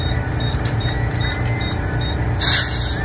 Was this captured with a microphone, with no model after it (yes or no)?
yes